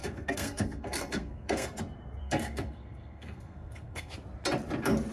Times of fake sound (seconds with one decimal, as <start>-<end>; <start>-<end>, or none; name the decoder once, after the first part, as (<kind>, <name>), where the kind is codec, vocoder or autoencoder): 0.0-1.8 (codec, SNAC); 2.2-4.1

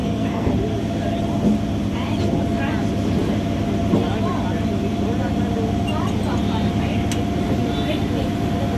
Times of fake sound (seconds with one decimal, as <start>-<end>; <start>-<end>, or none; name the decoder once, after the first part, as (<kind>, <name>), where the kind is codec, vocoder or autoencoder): 0.0-0.5 (codec, SNAC)

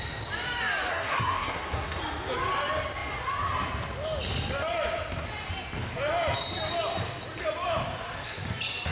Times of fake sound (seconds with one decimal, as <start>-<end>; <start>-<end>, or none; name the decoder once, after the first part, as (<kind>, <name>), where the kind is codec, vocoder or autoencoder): 0.9-2.0 (codec, SNAC)

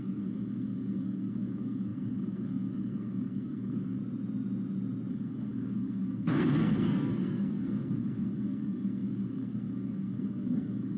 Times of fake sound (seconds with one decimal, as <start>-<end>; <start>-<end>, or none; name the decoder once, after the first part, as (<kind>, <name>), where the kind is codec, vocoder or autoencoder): 0.0-4.0 (codec, SNAC); 5.1-11.0